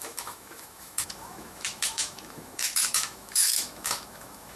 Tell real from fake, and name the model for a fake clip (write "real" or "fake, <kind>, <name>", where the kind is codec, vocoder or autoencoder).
fake, autoencoder, DAC-VAE